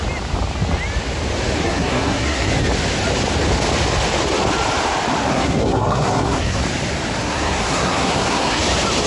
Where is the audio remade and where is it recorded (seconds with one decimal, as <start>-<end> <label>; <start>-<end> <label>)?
0.0-1.6 recorded; 1.6-2.5 remade; 2.5-5.3 recorded; 5.3-6.6 remade; 6.6-7.2 recorded; 7.2-8.6 remade; 8.6-9.1 recorded

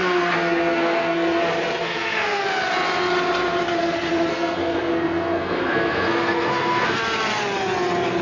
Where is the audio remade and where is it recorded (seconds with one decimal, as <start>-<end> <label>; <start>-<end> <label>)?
0.0-1.4 remade; 1.4-1.8 recorded; 1.8-2.4 remade; 2.4-4.3 recorded; 4.3-7.0 remade; 7.0-8.2 recorded

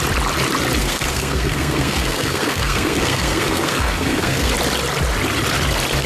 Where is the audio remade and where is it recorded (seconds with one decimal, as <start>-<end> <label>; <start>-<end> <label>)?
0.0-0.8 recorded; 0.8-4.5 remade; 4.5-6.1 recorded

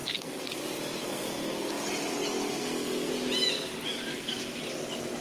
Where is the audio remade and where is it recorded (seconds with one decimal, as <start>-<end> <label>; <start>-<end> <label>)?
0.0-0.6 remade; 0.6-1.0 recorded; 1.0-1.7 remade; 1.7-2.5 recorded; 2.5-3.1 remade; 3.1-4.1 recorded; 4.1-4.6 remade; 4.6-5.2 recorded

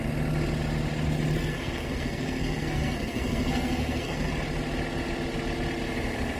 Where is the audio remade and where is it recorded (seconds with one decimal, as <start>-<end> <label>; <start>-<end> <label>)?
0.0-1.4 recorded; 1.4-4.3 remade; 4.3-6.4 recorded

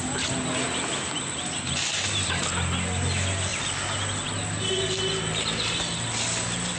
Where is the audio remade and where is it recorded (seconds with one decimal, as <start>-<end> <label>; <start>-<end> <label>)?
0.0-6.8 recorded